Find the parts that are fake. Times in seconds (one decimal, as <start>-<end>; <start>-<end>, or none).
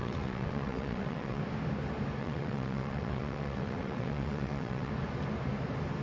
0.0-1.4; 2.2-4.9